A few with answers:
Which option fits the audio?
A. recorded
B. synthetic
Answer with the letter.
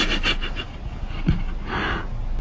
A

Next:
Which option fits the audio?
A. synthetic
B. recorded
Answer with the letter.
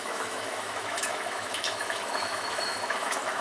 A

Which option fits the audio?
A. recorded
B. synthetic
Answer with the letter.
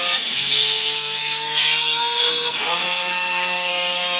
B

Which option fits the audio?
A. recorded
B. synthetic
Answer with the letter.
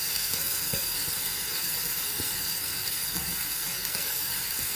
B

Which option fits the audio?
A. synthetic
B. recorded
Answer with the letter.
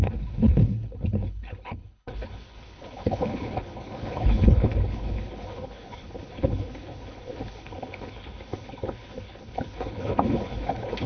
A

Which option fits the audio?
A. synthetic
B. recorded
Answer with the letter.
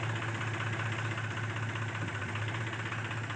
B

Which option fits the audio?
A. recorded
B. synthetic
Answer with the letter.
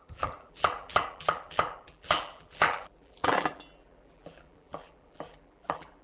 B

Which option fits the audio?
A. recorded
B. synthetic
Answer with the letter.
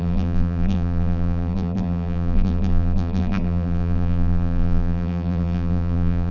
B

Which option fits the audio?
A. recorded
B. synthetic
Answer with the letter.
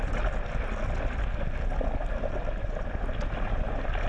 A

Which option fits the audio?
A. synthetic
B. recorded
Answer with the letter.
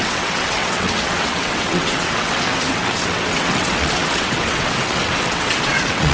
A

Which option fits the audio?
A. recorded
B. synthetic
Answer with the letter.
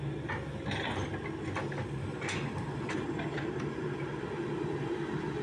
A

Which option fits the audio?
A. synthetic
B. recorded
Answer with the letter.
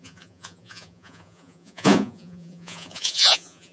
A